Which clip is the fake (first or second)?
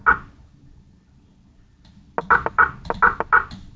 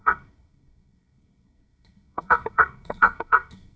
second